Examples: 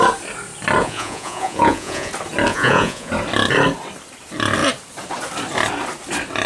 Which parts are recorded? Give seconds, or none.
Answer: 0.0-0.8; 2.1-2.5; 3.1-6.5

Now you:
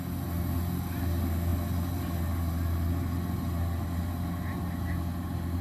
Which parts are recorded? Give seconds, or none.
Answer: 0.0-5.6

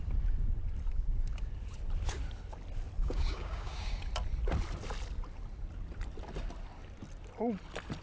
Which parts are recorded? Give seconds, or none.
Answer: 0.0-3.0; 4.1-8.0